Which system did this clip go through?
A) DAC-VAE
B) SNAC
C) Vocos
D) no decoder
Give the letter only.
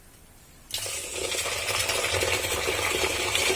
D